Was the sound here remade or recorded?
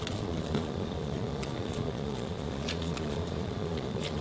remade